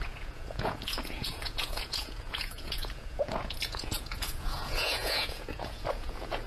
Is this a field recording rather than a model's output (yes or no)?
no